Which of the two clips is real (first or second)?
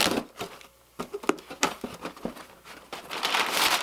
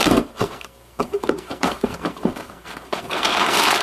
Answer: first